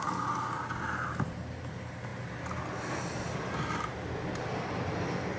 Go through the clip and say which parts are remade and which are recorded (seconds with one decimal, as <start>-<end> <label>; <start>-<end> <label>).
0.0-5.4 recorded

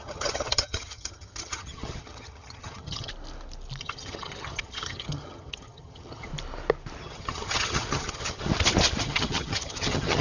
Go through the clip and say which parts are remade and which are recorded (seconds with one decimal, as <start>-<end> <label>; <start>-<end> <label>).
0.0-3.1 remade; 3.1-3.8 recorded; 3.8-6.3 remade; 6.3-7.0 recorded; 7.0-8.5 remade; 8.5-9.0 recorded; 9.0-10.2 remade

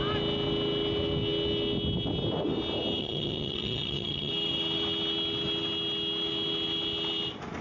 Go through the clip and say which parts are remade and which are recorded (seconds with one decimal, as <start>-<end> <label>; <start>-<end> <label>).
0.0-3.0 recorded; 3.0-4.3 remade; 4.3-7.6 recorded

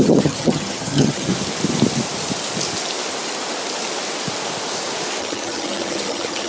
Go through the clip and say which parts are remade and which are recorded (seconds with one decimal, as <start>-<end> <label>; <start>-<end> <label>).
0.0-1.3 remade; 1.3-5.2 recorded; 5.2-6.5 remade

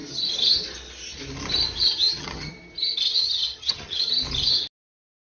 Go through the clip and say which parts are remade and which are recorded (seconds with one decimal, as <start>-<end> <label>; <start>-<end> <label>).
0.0-2.0 recorded; 2.0-2.5 remade; 2.5-3.2 recorded; 3.2-4.0 remade; 4.0-5.2 recorded

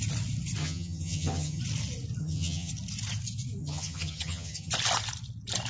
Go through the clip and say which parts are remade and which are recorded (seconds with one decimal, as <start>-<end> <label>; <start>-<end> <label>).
0.0-0.6 recorded; 0.6-1.6 remade; 1.6-2.2 recorded; 2.2-2.7 remade; 2.7-3.6 recorded; 3.6-4.7 remade; 4.7-5.7 recorded

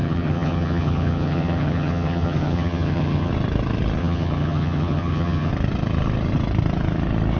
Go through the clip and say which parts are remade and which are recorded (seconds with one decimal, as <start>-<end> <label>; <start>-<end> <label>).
0.0-3.3 remade; 3.3-4.0 recorded; 4.0-5.5 remade; 5.5-7.4 recorded